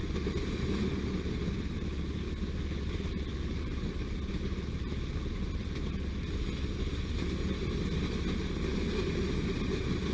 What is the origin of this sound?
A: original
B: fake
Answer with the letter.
A